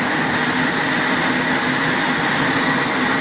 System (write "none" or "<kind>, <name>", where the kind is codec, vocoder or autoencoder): none